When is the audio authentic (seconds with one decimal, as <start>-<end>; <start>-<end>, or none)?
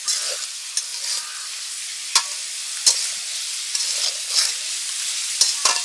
0.0-5.8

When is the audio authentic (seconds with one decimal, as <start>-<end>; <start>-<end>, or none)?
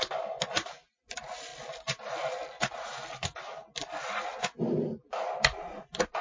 0.0-6.2